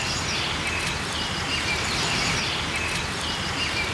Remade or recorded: recorded